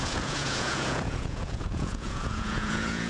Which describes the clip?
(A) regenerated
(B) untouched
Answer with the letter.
A